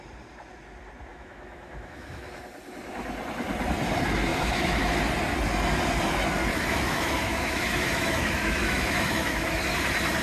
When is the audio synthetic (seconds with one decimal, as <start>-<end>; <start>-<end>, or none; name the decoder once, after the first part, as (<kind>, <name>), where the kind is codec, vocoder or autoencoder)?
1.1-2.3 (autoencoder, DAC-VAE); 4.3-5.0; 6.5-9.6